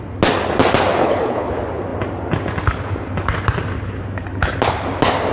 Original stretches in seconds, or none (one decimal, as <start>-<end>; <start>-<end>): 0.0-1.0; 1.5-5.3